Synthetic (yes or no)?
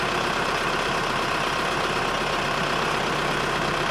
no